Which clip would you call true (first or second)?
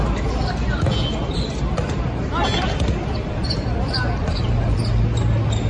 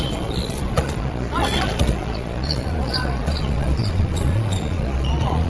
first